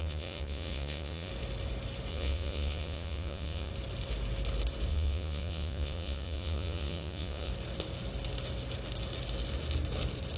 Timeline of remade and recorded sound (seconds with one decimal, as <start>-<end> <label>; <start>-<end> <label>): 0.0-1.3 remade; 1.3-2.1 recorded; 2.1-3.7 remade; 3.7-4.9 recorded; 4.9-7.5 remade; 7.5-10.4 recorded